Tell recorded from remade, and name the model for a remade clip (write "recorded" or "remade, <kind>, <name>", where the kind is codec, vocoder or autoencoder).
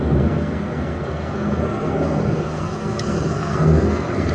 remade, codec, SNAC